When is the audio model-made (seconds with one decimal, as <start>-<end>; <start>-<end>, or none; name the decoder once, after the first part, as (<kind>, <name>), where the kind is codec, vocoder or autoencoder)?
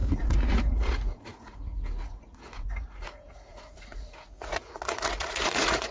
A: 0.0-5.9 (vocoder, Vocos)